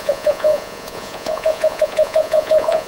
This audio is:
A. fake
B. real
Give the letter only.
A